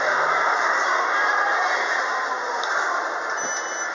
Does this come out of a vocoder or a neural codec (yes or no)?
no